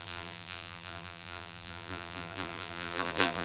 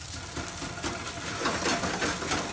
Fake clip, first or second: first